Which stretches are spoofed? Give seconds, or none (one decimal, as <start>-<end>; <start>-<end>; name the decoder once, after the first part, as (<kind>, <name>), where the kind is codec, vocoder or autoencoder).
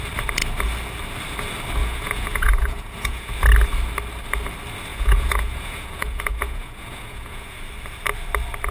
1.8-3.3 (vocoder, Vocos); 4.9-7.6